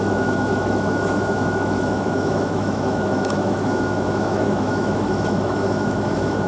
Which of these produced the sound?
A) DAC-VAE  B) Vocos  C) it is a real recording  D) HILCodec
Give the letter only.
A